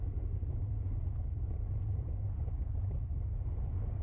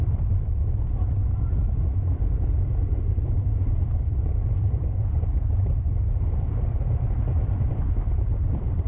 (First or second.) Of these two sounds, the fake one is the second